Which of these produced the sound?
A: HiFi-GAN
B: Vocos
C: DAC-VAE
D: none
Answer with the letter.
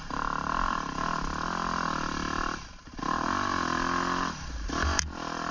D